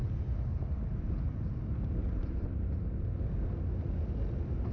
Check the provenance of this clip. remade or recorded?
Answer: recorded